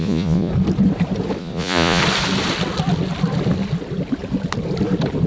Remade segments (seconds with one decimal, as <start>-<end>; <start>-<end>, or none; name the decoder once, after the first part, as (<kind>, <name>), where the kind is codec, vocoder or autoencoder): 0.0-0.5 (vocoder, Vocos); 1.4-2.0